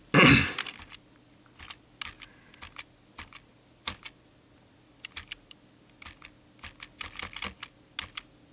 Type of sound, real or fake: real